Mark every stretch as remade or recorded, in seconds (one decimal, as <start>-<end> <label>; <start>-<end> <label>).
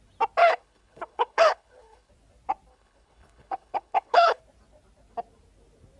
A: 0.0-0.4 recorded; 0.4-2.1 remade; 2.1-2.7 recorded; 2.7-4.4 remade; 4.4-6.0 recorded